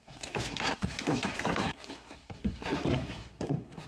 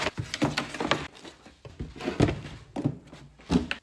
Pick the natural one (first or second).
second